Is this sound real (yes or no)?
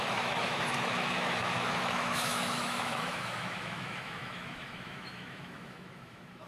no